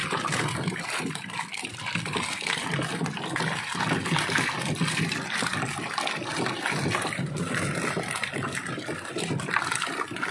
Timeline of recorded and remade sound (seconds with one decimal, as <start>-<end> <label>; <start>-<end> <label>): 0.0-2.9 remade; 2.9-10.3 recorded